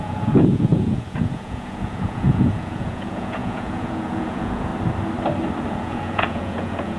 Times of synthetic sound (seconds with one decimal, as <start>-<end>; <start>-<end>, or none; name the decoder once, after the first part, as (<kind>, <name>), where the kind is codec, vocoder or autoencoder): 0.0-4.7 (vocoder, Vocos); 5.7-7.0